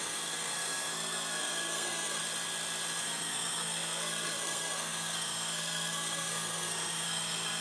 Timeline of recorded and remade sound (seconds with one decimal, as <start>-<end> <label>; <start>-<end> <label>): 0.0-2.2 remade; 2.2-3.0 recorded; 3.0-7.6 remade